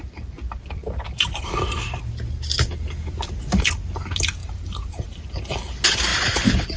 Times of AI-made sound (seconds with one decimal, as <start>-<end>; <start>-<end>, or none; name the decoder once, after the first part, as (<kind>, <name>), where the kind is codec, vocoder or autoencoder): 0.8-2.0 (vocoder, BigVGAN v2); 4.4-5.2